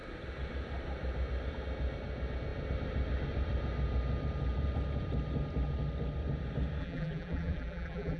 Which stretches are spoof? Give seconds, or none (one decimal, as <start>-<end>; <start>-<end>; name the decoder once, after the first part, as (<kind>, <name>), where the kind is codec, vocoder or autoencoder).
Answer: 6.8-8.2 (vocoder, BigVGAN v2)